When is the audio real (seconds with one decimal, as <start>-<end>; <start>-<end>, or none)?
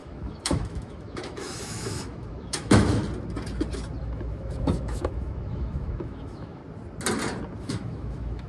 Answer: 3.0-4.0; 6.6-7.6